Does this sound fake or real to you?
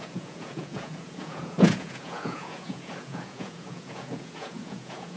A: fake